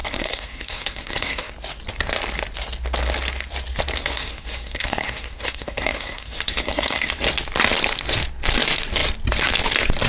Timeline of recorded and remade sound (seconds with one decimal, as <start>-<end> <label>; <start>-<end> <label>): 0.0-1.5 remade; 1.5-4.0 recorded; 4.0-7.1 remade; 7.1-10.1 recorded

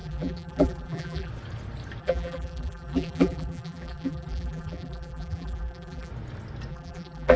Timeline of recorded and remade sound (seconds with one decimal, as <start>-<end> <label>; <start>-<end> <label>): 0.0-1.3 remade; 1.3-2.0 recorded; 2.0-6.1 remade; 6.1-6.7 recorded; 6.7-7.4 remade

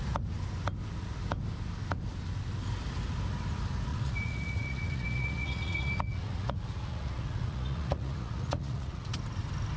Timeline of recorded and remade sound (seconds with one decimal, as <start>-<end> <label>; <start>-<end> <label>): 0.0-3.9 recorded; 3.9-9.1 remade; 9.1-9.8 recorded